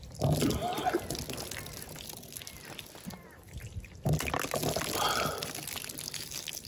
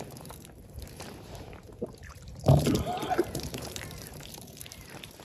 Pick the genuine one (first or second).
first